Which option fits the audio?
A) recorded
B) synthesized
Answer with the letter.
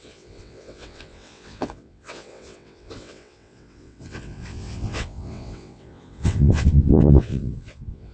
B